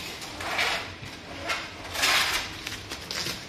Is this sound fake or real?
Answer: real